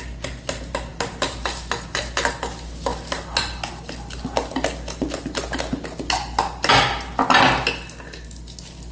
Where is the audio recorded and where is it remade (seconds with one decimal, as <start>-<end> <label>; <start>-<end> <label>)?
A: 0.0-8.9 recorded